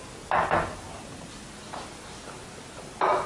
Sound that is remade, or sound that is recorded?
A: recorded